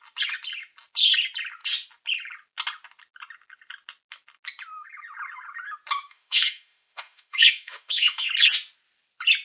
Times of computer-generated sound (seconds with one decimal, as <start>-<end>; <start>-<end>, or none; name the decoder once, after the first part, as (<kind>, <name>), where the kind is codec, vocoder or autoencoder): 6.0-8.3 (autoencoder, DAC-VAE)